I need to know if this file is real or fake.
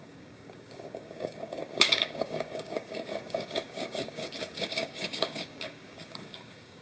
fake